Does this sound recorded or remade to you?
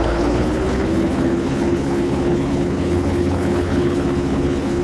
remade